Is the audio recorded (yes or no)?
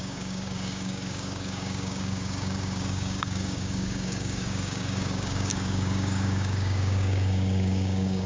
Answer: no